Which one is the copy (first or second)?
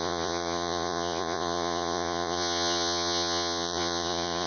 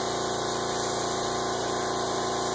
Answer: first